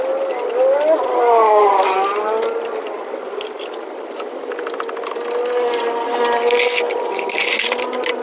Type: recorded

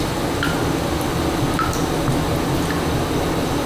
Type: recorded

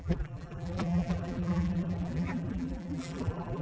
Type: remade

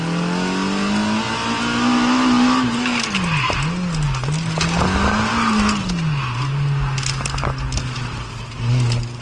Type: recorded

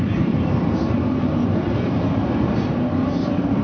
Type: remade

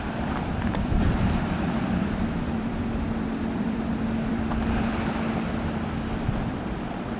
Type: remade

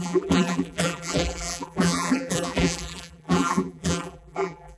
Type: remade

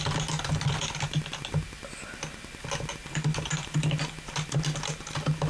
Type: recorded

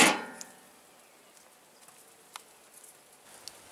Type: recorded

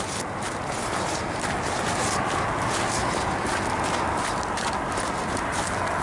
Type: recorded